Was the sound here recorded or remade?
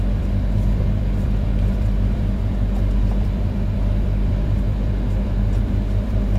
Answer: remade